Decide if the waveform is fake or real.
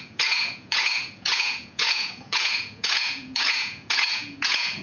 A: fake